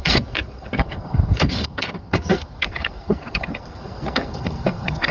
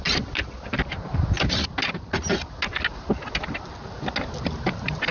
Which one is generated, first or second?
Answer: first